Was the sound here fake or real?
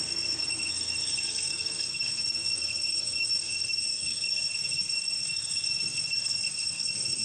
fake